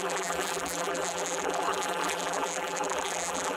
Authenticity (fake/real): fake